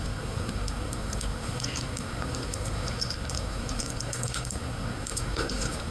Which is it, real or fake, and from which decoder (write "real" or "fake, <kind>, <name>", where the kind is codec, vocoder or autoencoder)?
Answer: fake, codec, SNAC